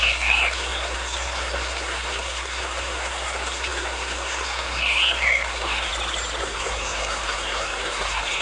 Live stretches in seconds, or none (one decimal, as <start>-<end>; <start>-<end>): 5.9-6.4